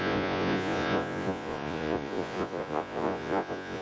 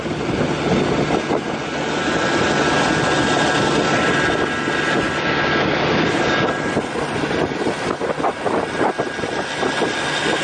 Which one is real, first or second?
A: second